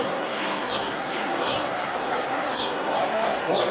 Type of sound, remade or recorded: remade